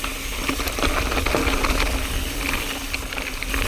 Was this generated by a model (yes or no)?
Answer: no